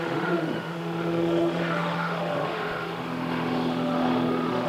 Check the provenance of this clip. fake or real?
fake